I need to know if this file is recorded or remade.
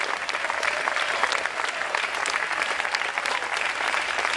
recorded